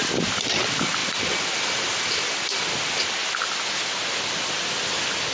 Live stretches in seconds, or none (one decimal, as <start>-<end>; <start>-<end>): 0.0-5.3

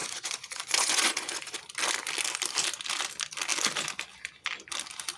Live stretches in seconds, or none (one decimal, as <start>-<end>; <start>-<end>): 1.6-5.2

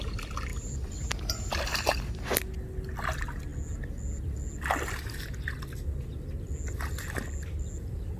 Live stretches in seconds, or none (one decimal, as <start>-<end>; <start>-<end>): 0.0-0.5; 2.1-8.2

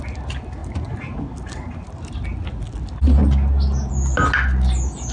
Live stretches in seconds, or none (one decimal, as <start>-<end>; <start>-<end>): 0.0-0.6; 1.6-5.1

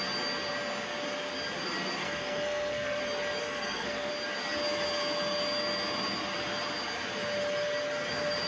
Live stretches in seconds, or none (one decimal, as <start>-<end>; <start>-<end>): 0.0-2.0; 3.0-3.4; 4.1-8.5